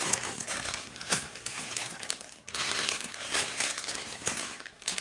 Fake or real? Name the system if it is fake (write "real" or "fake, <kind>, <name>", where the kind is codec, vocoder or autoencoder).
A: fake, codec, SNAC